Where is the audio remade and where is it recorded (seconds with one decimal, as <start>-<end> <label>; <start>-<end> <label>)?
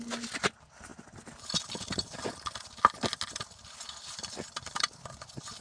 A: 0.0-5.6 recorded